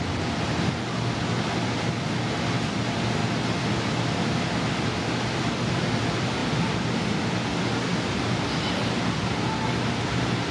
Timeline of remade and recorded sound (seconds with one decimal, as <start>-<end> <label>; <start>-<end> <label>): 0.0-10.5 recorded